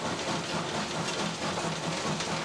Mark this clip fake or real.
real